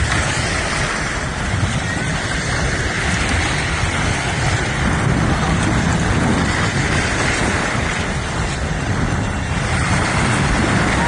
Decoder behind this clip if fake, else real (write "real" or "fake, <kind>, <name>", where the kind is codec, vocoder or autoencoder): real